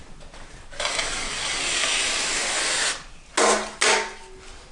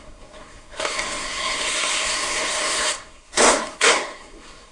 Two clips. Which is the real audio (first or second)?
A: first